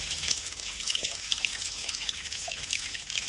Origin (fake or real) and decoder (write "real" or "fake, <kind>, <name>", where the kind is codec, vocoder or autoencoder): fake, autoencoder, DAC-VAE